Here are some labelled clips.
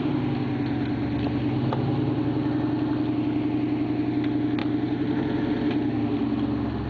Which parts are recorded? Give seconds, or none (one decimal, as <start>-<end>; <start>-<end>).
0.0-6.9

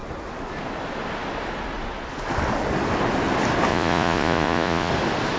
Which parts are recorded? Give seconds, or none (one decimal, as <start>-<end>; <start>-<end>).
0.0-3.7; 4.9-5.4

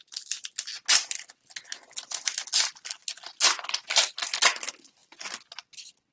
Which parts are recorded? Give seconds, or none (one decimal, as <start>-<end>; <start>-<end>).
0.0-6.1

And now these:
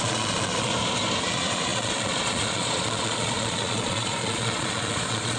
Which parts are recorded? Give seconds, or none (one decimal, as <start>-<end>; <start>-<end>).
0.7-1.2

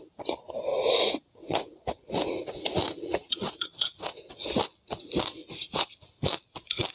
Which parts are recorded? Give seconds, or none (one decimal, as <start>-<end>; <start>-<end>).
0.0-0.7; 4.3-5.4; 5.9-6.9

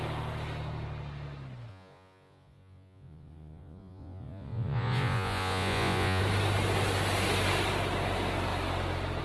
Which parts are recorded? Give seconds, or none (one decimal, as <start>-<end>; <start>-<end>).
0.0-1.7; 6.2-9.2

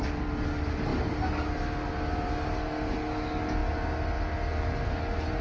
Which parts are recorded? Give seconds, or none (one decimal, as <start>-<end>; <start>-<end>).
0.0-5.4

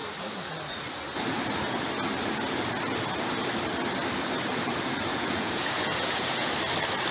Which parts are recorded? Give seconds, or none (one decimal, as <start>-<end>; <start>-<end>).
0.0-5.1; 6.5-7.1